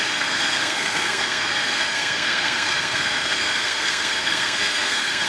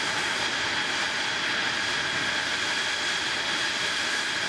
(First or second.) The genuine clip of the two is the second